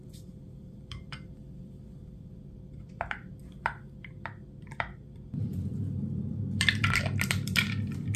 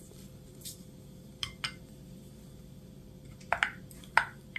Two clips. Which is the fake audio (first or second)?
first